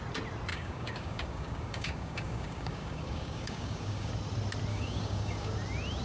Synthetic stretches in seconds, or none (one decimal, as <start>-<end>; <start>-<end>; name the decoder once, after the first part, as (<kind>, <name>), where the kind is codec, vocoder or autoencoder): 0.5-4.1 (codec, DAC); 4.7-5.5